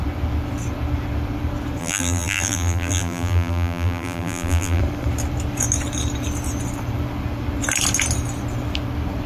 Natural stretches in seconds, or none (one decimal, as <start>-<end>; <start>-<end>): 0.0-1.8; 4.8-9.3

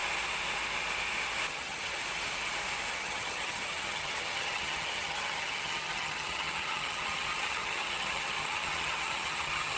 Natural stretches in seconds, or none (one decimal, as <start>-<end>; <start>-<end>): 0.0-1.5; 2.0-2.9

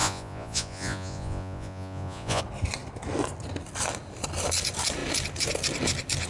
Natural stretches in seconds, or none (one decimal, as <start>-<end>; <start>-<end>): 2.4-6.3

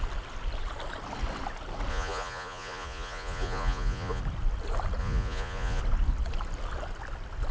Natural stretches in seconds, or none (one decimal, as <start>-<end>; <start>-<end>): 0.0-1.9; 4.2-5.0; 5.8-7.5

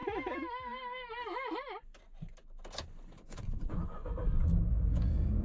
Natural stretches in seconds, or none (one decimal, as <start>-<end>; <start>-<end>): 0.0-3.2; 4.2-4.7

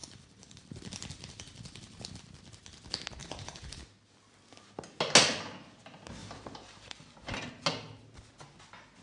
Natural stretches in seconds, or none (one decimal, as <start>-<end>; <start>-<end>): 2.1-3.2; 3.8-6.2; 7.4-9.0

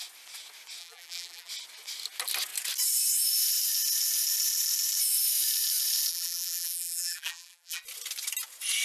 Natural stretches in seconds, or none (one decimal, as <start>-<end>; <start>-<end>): 0.0-0.8; 1.5-6.1; 7.8-8.8

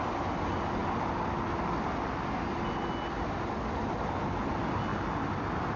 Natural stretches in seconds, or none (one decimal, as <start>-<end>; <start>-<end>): 0.0-5.8